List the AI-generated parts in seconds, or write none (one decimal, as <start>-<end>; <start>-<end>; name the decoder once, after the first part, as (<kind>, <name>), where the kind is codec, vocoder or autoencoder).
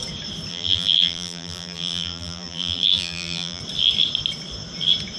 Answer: 0.5-3.6 (vocoder, BigVGAN v2)